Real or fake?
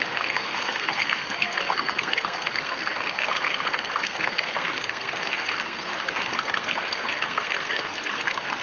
fake